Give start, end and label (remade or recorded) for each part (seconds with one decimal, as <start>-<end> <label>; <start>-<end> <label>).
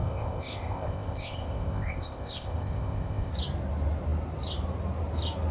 0.0-3.3 remade; 3.3-5.5 recorded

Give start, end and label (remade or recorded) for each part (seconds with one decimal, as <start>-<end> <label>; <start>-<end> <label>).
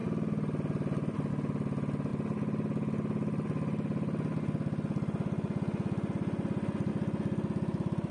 0.0-8.1 recorded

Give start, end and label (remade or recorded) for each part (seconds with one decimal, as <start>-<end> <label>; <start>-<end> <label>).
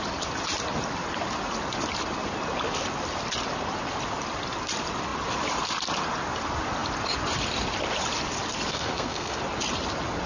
0.0-8.7 recorded; 8.7-9.4 remade; 9.4-10.3 recorded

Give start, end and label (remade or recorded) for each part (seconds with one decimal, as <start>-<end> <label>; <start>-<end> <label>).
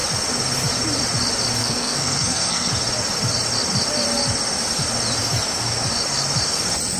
0.0-1.6 recorded; 1.6-2.7 remade; 2.7-7.0 recorded